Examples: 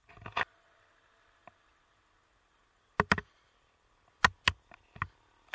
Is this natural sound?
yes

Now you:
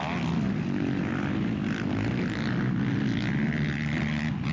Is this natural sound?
yes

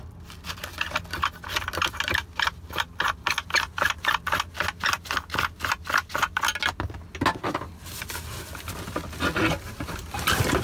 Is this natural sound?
yes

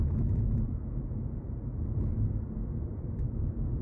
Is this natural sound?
no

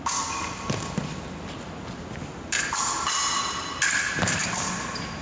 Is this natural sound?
yes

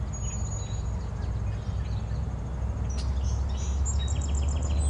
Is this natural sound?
yes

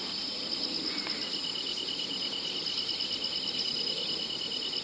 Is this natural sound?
yes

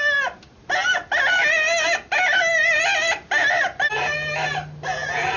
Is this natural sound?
yes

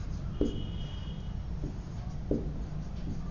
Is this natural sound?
yes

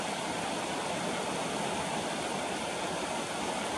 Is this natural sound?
yes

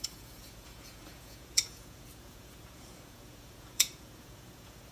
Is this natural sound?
no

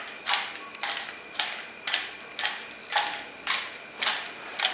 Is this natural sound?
yes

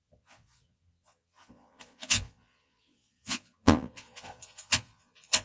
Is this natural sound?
no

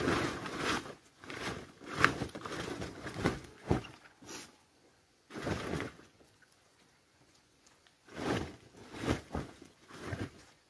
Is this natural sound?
no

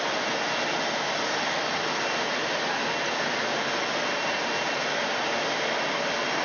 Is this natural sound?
yes